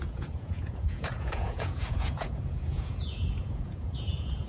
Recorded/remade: remade